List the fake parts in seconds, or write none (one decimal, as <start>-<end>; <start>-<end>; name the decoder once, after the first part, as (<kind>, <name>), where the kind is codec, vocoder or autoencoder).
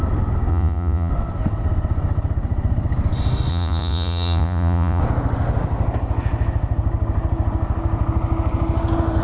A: 0.5-1.1 (vocoder, Vocos); 3.5-5.0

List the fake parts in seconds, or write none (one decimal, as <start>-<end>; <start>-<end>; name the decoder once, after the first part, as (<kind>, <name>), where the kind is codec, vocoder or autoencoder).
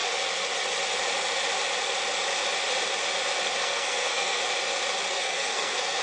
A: 3.6-4.4 (codec, SNAC); 5.1-6.0